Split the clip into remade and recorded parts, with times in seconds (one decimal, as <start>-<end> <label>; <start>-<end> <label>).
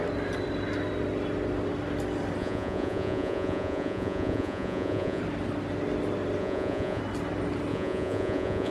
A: 0.0-2.4 recorded; 2.4-5.2 remade; 5.2-6.4 recorded; 6.4-7.0 remade; 7.0-7.7 recorded; 7.7-8.7 remade